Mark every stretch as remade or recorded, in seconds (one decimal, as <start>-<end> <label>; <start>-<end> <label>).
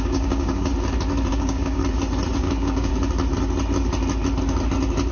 0.0-0.7 remade; 0.7-1.3 recorded; 1.3-1.8 remade; 1.8-2.4 recorded; 2.4-2.9 remade; 2.9-5.1 recorded